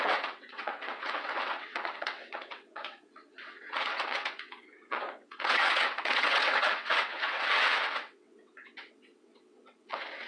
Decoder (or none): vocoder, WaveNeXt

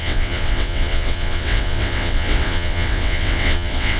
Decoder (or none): vocoder, WaveNeXt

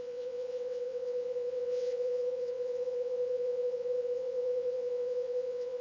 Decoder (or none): vocoder, WaveNeXt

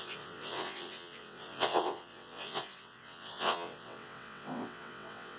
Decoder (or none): vocoder, WaveNeXt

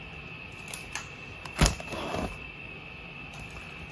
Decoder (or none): none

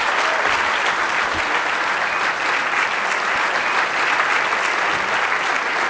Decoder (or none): none